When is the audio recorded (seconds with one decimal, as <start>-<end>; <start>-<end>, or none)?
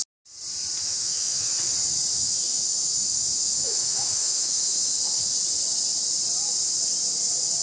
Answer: 0.0-0.8; 1.5-2.1; 5.4-7.6